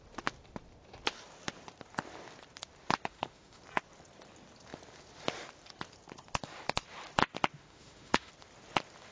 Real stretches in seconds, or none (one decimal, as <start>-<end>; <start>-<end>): 0.0-3.1; 3.6-7.6; 8.3-9.1